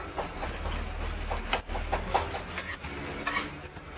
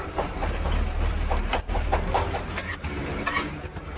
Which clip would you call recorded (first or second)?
first